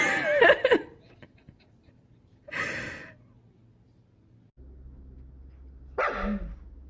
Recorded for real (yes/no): yes